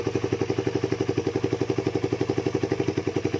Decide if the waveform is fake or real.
real